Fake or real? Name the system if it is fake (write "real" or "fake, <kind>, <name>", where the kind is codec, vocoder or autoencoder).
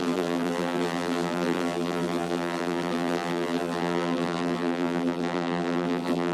fake, vocoder, BigVGAN v2